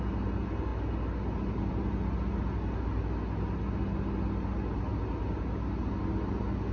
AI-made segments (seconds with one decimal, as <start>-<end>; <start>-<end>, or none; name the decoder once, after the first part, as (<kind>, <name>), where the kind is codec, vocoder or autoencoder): none